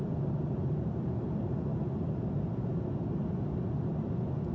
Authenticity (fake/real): real